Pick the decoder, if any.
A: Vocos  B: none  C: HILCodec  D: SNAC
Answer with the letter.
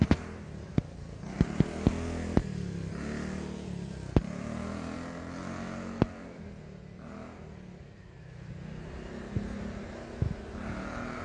B